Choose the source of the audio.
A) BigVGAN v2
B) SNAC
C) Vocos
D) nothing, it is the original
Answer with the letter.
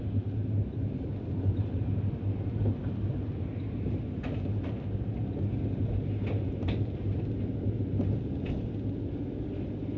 D